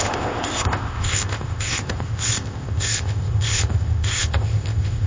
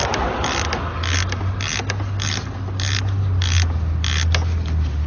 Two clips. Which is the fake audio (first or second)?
first